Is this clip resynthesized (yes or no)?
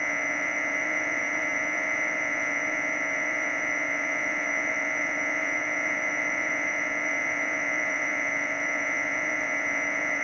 yes